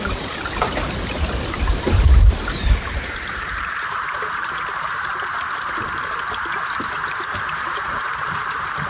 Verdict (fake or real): fake